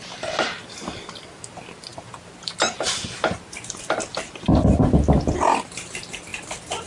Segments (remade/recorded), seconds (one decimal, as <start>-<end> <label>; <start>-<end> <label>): 0.0-1.9 recorded; 1.9-3.8 remade; 3.8-6.9 recorded